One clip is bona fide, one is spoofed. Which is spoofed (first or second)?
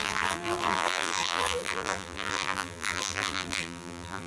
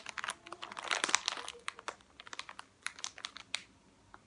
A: first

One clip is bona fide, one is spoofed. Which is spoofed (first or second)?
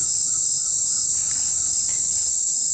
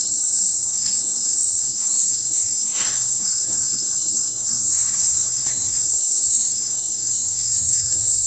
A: second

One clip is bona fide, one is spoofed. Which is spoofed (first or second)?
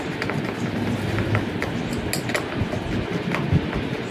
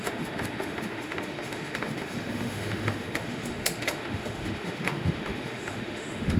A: second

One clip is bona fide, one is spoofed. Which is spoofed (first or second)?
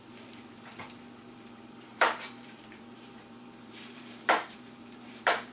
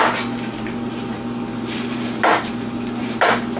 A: first